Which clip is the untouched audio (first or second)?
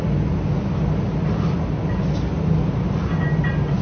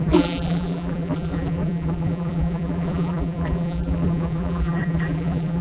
first